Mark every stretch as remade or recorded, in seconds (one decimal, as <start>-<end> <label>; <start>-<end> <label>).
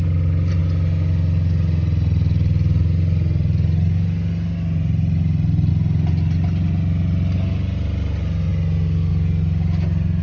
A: 0.0-10.2 recorded